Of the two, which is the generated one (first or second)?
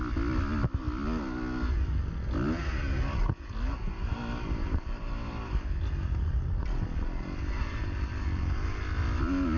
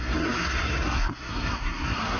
second